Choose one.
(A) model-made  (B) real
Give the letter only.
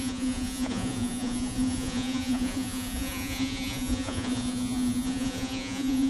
A